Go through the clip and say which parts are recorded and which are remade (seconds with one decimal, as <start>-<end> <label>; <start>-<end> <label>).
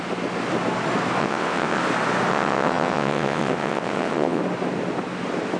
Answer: 0.0-1.2 recorded; 1.2-1.8 remade; 1.8-2.3 recorded; 2.3-4.4 remade; 4.4-5.6 recorded